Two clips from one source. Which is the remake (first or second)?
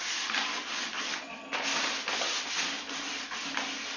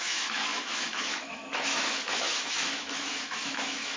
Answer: second